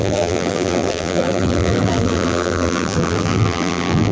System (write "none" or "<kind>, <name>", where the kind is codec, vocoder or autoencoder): vocoder, BigVGAN v2